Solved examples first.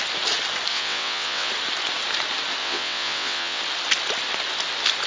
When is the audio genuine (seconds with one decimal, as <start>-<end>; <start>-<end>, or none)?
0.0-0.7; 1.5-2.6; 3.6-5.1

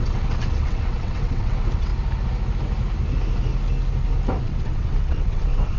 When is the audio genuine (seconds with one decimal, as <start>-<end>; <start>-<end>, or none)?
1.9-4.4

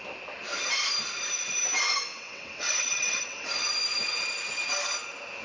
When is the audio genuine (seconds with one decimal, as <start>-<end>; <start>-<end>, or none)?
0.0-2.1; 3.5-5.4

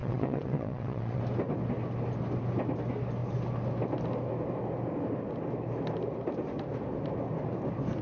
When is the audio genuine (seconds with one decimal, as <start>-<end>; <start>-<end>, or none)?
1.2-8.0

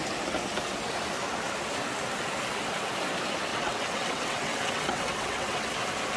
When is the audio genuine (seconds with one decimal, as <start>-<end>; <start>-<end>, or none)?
0.0-3.5; 5.8-6.2

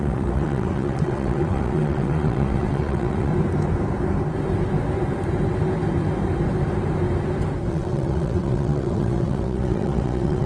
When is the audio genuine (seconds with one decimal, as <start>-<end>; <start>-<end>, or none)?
3.3-7.7